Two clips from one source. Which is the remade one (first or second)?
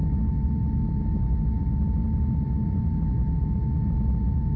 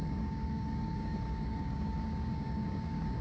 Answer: second